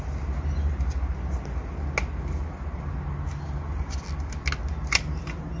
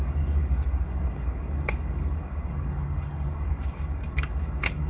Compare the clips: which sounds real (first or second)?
first